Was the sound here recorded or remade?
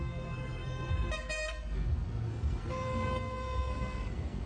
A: remade